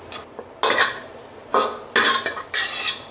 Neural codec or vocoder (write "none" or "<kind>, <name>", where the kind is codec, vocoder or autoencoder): none